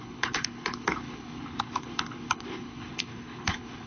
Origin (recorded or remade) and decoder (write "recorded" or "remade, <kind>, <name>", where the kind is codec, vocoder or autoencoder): remade, codec, HILCodec